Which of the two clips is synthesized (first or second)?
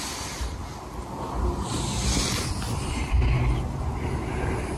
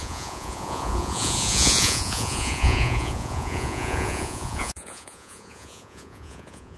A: second